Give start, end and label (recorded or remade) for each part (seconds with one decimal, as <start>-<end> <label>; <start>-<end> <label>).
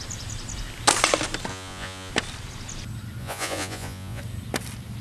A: 0.0-1.5 recorded; 1.5-2.1 remade; 2.1-3.2 recorded; 3.2-4.2 remade; 4.2-5.0 recorded